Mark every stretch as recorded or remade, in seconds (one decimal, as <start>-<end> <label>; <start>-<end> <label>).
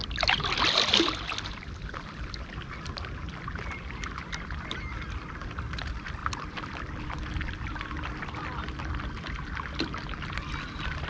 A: 0.0-11.1 recorded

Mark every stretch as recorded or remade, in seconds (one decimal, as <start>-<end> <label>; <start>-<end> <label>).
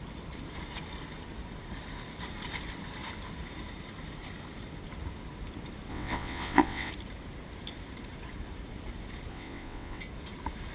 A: 0.0-5.9 recorded; 5.9-6.9 remade; 6.9-9.3 recorded; 9.3-10.0 remade; 10.0-10.7 recorded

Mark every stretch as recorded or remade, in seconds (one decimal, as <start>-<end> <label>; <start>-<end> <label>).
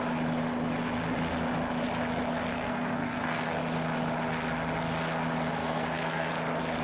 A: 0.0-2.5 recorded; 2.5-3.6 remade; 3.6-5.6 recorded; 5.6-6.3 remade; 6.3-6.8 recorded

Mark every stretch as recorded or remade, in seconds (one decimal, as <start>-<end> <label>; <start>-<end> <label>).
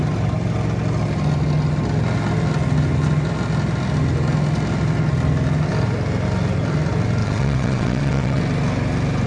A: 0.0-7.2 recorded; 7.2-8.4 remade; 8.4-9.3 recorded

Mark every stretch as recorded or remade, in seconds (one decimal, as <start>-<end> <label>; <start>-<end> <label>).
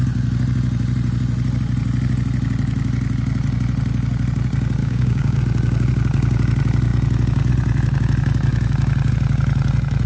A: 0.0-4.8 recorded; 4.8-5.4 remade; 5.4-10.1 recorded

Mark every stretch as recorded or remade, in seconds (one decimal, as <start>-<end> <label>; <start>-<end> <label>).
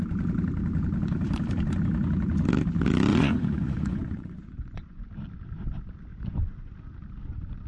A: 0.0-3.1 recorded; 3.1-5.0 remade; 5.0-6.1 recorded; 6.1-6.7 remade; 6.7-7.7 recorded